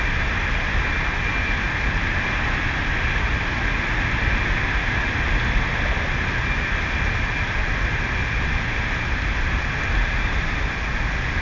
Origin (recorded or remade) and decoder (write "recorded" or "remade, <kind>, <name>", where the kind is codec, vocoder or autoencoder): recorded